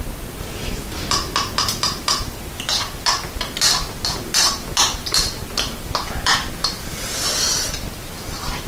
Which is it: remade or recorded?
recorded